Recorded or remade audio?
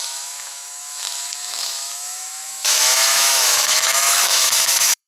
remade